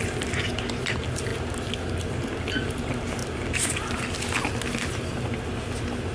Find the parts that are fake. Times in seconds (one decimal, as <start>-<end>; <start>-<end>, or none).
none